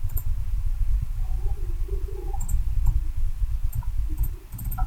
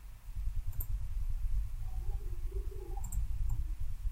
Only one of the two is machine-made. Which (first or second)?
first